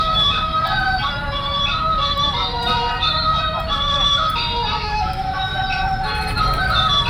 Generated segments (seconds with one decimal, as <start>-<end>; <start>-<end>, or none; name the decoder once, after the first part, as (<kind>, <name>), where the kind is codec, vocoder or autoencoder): 0.0-0.5 (autoencoder, DAC-VAE); 4.8-5.5